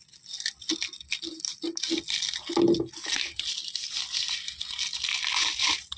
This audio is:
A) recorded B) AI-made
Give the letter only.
A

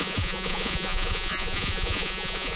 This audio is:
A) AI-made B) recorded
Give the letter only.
A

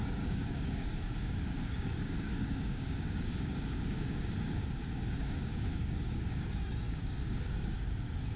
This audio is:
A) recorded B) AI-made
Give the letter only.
B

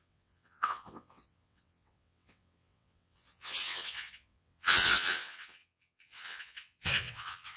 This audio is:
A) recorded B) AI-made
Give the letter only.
B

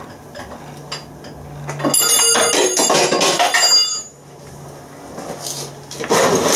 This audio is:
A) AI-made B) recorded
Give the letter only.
B